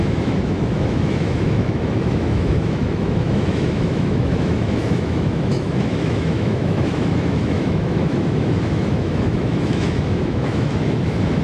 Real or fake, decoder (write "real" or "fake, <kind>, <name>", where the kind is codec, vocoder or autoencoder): fake, autoencoder, DAC-VAE